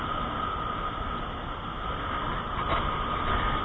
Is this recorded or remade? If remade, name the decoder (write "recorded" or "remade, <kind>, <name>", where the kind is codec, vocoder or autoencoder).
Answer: recorded